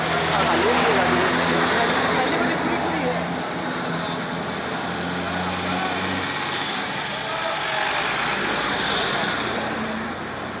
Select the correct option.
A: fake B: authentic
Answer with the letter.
B